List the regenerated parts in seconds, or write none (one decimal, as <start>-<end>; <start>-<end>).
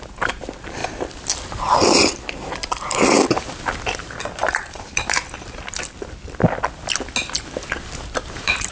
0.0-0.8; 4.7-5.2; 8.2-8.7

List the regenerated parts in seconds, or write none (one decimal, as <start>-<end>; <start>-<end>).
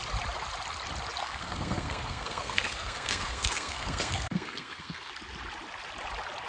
1.2-5.1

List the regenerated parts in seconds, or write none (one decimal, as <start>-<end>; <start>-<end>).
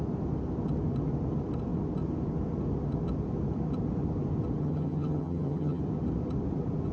4.6-5.8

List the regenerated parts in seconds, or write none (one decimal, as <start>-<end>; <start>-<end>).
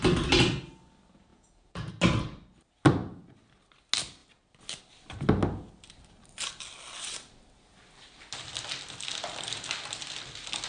1.3-1.9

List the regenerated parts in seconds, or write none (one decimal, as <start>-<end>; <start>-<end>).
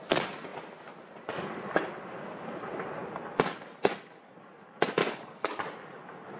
5.0-5.6